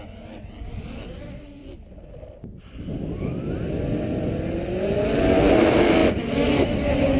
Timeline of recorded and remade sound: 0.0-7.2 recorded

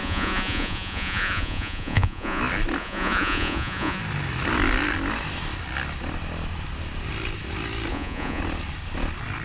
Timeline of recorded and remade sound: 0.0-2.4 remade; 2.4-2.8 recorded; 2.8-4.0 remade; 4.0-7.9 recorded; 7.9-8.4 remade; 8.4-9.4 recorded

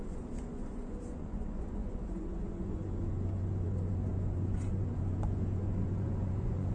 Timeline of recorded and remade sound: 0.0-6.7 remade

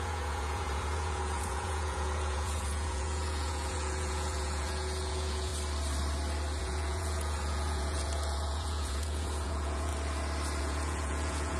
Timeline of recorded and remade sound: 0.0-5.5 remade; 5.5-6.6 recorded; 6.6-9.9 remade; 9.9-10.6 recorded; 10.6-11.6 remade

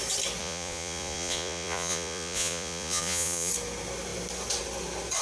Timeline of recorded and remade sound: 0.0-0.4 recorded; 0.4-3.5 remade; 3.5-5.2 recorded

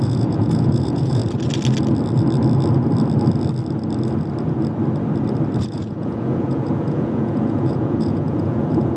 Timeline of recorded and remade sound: 0.0-1.2 remade; 1.2-5.6 recorded; 5.6-9.0 remade

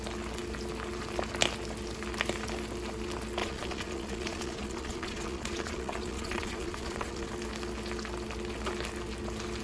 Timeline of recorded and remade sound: 0.0-3.4 recorded; 3.4-7.3 remade; 7.3-9.6 recorded

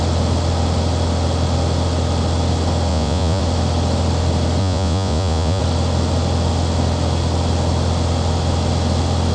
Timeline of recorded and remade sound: 0.0-2.9 recorded; 2.9-3.4 remade; 3.4-4.6 recorded; 4.6-5.6 remade; 5.6-9.3 recorded